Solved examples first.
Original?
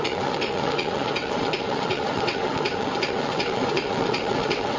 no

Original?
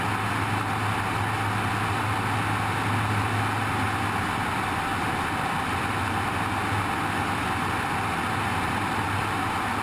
yes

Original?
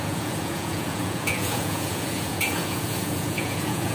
no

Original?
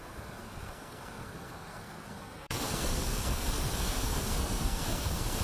no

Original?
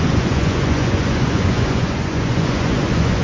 no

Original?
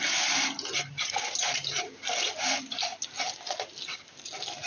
yes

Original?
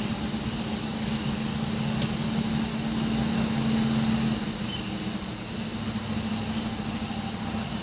yes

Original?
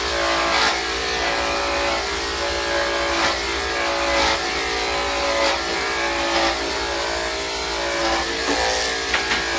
yes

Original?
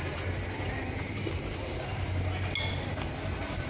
yes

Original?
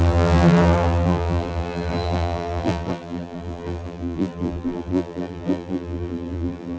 no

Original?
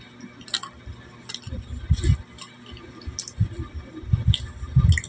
yes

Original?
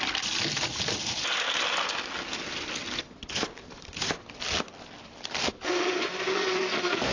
yes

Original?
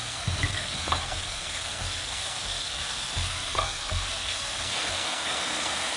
no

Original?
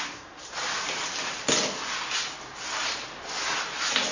yes